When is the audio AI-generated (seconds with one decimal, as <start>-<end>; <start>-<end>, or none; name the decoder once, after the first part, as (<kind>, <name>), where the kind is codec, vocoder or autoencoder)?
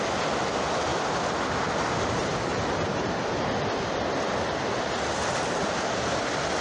none